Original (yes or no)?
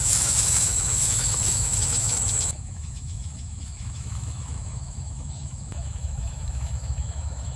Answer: no